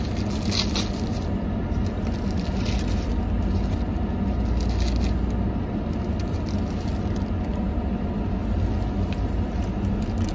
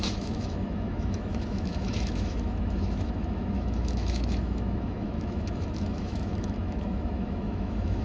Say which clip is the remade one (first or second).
second